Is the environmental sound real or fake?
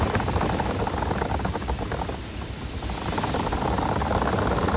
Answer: real